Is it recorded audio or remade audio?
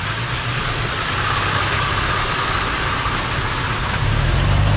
recorded